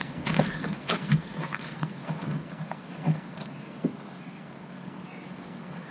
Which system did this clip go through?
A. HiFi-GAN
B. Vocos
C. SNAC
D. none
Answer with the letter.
C